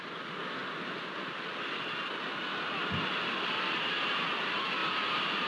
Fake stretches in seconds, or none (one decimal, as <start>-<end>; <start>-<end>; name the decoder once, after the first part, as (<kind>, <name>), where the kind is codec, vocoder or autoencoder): 4.8-5.5 (vocoder, BigVGAN v2)